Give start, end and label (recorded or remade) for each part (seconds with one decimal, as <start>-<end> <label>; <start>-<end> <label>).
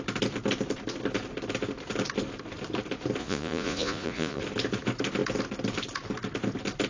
0.0-3.2 recorded; 3.2-4.4 remade; 4.4-6.9 recorded